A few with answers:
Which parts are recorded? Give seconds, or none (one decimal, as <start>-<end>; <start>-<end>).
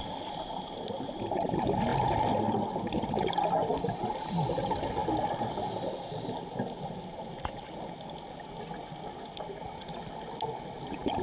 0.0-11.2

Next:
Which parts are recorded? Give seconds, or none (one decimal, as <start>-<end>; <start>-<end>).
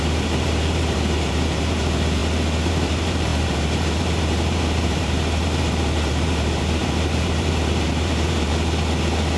2.2-2.7; 8.5-9.4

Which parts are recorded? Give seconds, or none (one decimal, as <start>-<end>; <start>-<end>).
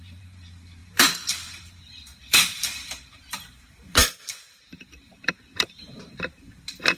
none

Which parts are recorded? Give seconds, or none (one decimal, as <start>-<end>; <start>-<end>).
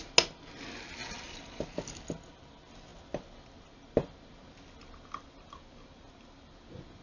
0.0-1.0; 1.6-7.0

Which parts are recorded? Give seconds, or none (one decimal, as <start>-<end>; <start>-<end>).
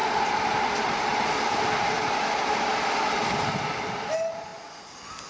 0.7-4.5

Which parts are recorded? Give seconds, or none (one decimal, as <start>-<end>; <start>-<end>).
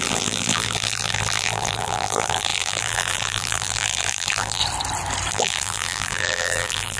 4.6-5.3